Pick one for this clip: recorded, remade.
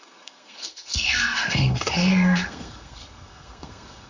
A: remade